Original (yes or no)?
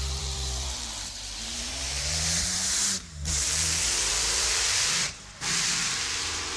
no